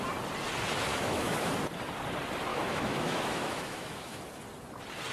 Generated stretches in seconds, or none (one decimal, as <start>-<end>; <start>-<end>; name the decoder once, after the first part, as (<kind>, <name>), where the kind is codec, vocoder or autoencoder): 0.9-1.5 (autoencoder, DAC-VAE); 2.5-4.2